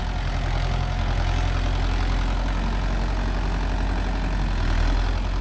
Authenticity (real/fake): real